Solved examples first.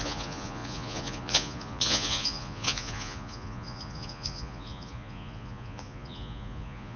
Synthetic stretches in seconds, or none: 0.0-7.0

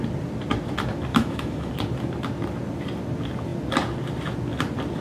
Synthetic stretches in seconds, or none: 1.1-1.7

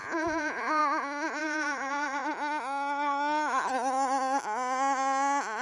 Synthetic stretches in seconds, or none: 0.0-0.8; 1.4-2.2

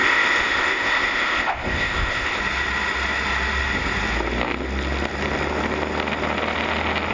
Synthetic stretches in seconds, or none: 0.0-2.4

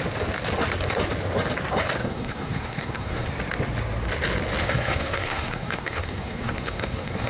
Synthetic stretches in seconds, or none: 2.0-3.3; 4.6-7.3

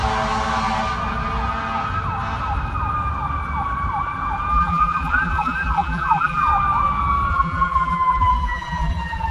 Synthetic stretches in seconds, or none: 4.5-6.5; 7.3-9.3

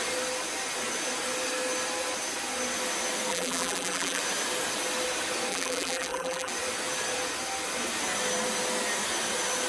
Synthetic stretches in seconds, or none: 3.3-4.2; 5.5-6.5